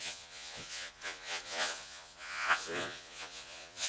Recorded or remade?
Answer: remade